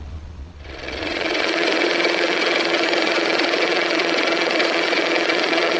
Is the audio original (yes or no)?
no